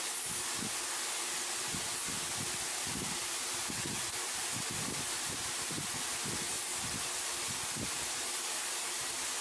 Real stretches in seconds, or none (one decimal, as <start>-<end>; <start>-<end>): 0.0-9.4